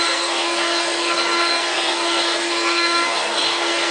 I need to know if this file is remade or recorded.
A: remade